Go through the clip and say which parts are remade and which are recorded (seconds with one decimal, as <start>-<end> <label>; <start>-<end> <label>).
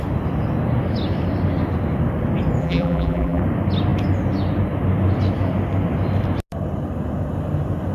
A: 0.0-2.6 recorded; 2.6-3.4 remade; 3.4-7.9 recorded